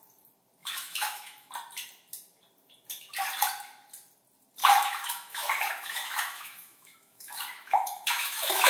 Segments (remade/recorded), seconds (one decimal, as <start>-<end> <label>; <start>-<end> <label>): 0.0-0.6 recorded; 0.6-1.5 remade; 1.5-4.6 recorded; 4.6-8.7 remade